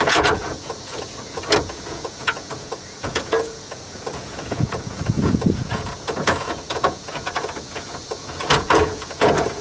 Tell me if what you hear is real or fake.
fake